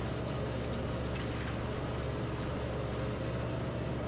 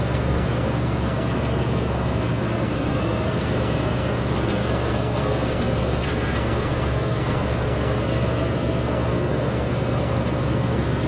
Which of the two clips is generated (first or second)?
second